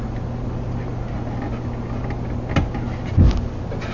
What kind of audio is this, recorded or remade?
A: recorded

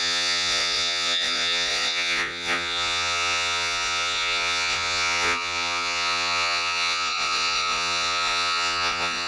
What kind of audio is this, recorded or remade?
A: remade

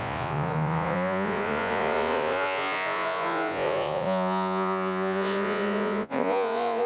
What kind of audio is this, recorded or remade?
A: remade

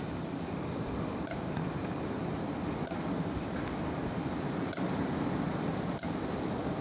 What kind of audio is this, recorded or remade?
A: recorded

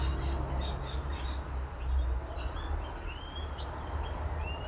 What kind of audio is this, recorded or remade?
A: recorded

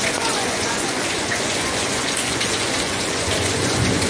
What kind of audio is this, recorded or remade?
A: remade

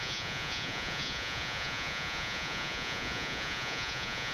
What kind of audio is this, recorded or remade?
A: remade